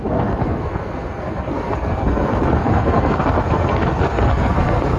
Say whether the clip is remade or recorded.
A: remade